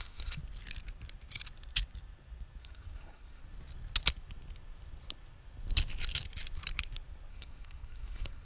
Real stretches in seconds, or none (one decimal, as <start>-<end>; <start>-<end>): 0.4-2.6; 3.4-7.3